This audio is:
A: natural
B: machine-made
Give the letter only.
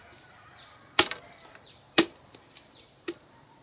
B